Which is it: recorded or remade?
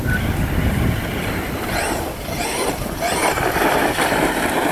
remade